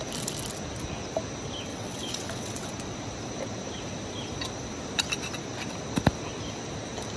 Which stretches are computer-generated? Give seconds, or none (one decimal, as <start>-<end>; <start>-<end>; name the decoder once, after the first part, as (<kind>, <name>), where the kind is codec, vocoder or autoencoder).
1.7-2.7 (vocoder, WaveNeXt)